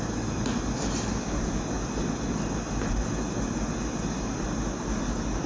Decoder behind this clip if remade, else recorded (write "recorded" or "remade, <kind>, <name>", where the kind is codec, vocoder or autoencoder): recorded